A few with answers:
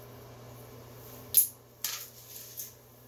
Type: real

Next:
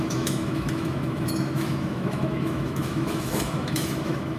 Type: fake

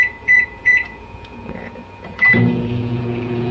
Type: fake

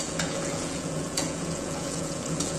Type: fake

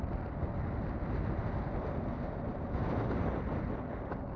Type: real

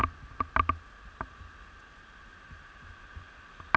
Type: real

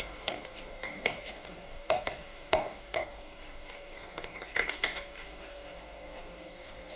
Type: fake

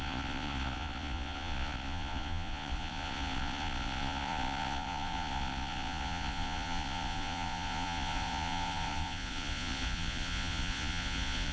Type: fake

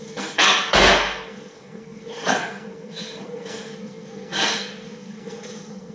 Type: fake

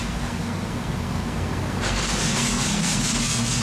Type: fake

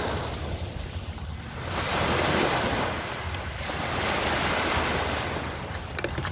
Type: real